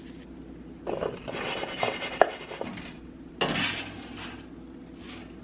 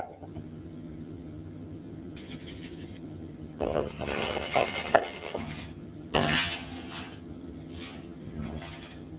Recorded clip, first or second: first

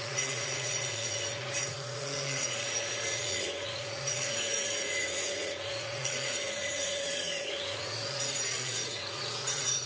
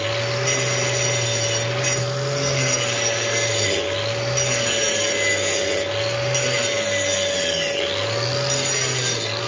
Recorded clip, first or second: second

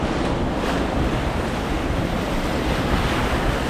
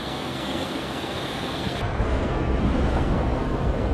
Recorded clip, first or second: first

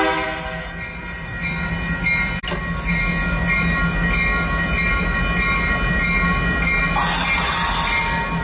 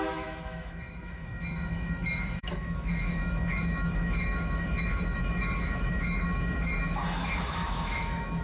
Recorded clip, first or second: first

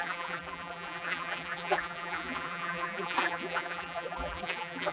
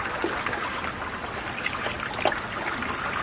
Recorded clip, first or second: second